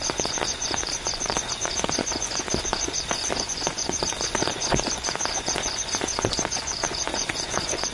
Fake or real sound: fake